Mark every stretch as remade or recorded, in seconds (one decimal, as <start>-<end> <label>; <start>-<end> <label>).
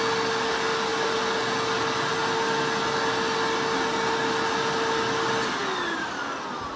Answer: 0.0-6.8 recorded